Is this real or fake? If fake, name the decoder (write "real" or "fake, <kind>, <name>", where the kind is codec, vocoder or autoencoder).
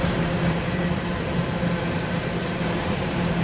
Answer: fake, vocoder, BigVGAN v2